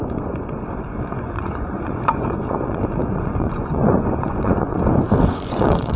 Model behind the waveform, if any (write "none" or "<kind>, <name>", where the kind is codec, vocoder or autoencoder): vocoder, Vocos